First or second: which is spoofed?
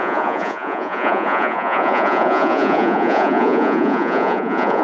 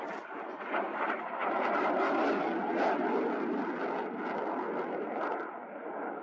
first